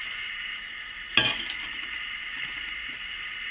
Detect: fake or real real